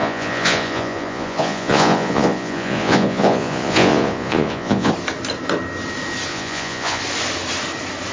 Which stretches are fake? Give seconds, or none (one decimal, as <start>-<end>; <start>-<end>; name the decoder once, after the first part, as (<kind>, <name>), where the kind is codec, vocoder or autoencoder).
0.0-4.9 (vocoder, Vocos); 6.3-7.0